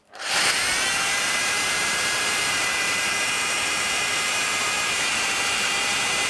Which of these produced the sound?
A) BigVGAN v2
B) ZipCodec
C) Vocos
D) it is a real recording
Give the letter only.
A